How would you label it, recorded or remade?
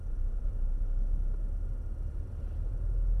recorded